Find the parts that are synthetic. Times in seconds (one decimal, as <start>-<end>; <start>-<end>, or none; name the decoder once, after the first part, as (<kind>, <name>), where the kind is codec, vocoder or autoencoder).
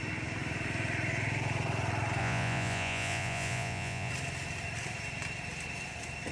2.2-4.1 (vocoder, Vocos)